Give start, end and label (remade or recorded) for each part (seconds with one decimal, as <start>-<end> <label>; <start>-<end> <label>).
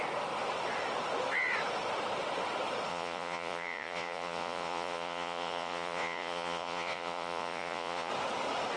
0.0-2.9 recorded; 2.9-8.1 remade; 8.1-8.8 recorded